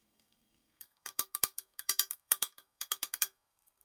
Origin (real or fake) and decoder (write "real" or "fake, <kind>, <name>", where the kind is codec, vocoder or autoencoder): fake, codec, SNAC